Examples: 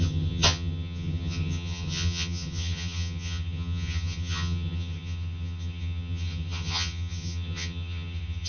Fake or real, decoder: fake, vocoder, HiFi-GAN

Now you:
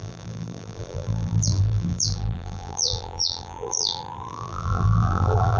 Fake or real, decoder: fake, vocoder, BigVGAN v2